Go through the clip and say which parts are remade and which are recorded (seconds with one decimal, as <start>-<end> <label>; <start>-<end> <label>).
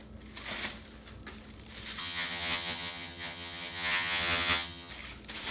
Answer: 0.0-2.0 recorded; 2.0-4.9 remade; 4.9-5.5 recorded